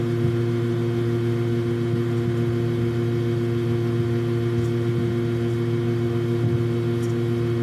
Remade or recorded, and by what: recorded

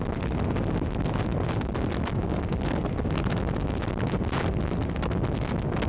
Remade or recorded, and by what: recorded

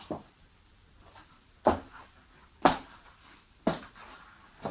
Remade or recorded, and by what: recorded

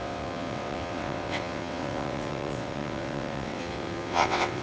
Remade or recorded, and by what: remade, vocoder, WaveNeXt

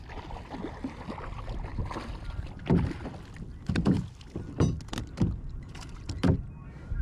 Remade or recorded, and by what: recorded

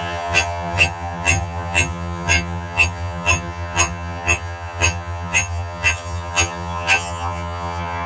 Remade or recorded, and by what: remade, vocoder, HiFi-GAN